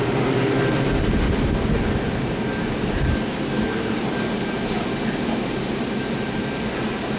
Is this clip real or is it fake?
real